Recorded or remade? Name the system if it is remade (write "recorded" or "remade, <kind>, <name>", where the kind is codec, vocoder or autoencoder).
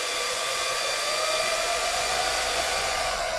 remade, vocoder, Vocos